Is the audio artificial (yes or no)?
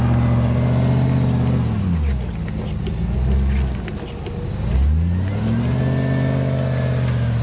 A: no